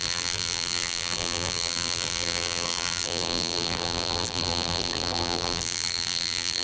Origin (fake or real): fake